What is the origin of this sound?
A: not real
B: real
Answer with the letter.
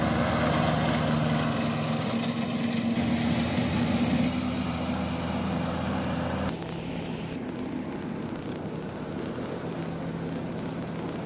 B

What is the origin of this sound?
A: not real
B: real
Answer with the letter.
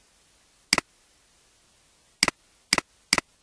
B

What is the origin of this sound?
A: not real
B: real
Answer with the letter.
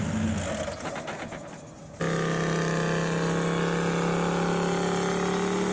B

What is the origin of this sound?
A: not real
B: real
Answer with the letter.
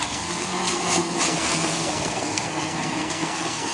A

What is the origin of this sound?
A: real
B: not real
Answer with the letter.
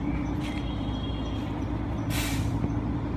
A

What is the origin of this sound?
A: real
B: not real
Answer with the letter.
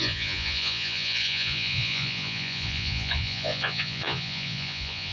B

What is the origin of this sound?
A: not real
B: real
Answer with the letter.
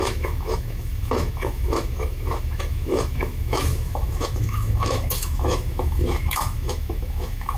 A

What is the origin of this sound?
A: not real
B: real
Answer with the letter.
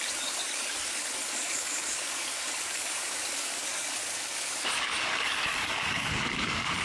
A